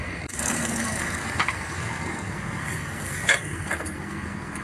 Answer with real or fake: fake